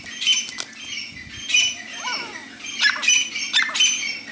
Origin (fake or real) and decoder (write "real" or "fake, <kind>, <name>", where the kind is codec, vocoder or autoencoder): real